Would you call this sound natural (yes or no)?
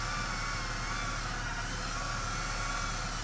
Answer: yes